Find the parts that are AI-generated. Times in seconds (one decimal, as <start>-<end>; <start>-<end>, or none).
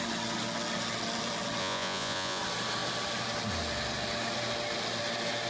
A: 1.6-2.4